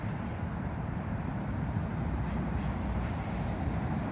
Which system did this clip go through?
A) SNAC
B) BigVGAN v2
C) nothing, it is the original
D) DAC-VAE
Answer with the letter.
B